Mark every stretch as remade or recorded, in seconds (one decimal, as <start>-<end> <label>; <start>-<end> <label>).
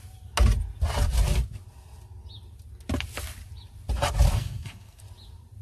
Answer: 0.0-4.3 recorded; 4.3-5.0 remade; 5.0-5.6 recorded